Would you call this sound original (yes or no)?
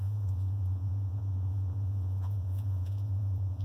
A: no